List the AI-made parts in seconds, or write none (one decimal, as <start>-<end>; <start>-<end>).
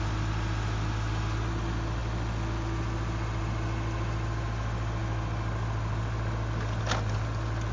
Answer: none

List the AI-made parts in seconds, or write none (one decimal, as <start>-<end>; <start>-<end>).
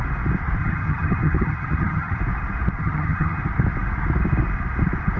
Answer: 0.6-2.2; 2.8-3.4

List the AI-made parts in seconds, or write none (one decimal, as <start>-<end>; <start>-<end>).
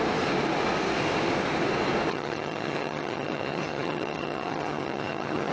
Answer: 2.1-5.5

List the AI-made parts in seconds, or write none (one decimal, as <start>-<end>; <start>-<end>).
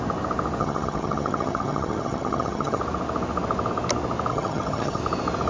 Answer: 0.6-2.8; 4.3-5.0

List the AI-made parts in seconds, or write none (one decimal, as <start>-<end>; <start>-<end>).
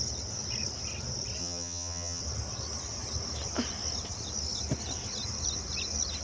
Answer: 1.4-2.2